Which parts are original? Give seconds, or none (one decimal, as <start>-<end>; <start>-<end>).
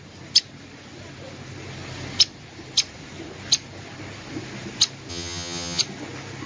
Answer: 0.0-5.1; 5.8-6.5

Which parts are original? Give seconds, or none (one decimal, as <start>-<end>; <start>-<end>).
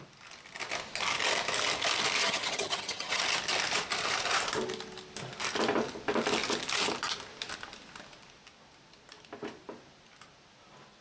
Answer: 0.0-2.2; 3.2-11.0